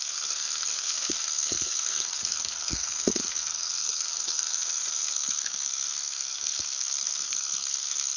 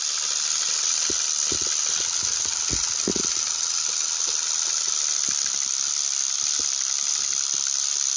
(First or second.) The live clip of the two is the second